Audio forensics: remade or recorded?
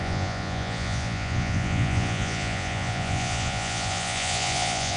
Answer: remade